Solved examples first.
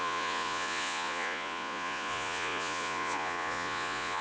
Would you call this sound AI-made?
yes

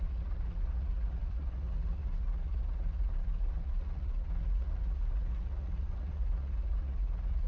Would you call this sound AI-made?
yes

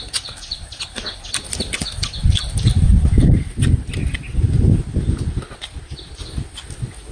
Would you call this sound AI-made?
no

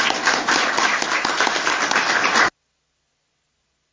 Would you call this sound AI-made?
no